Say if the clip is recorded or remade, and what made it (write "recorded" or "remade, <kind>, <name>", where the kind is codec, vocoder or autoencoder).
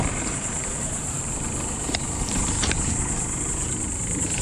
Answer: remade, vocoder, BigVGAN v2